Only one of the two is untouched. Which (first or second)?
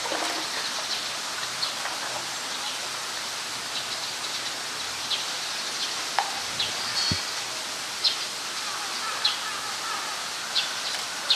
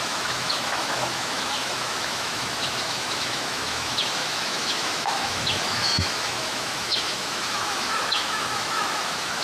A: first